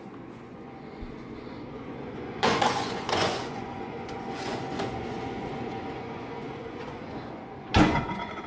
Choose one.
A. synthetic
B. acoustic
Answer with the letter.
A